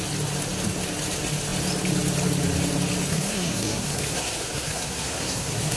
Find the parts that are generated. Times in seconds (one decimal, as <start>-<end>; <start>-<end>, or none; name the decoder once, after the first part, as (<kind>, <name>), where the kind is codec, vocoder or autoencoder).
3.1-5.8 (codec, SNAC)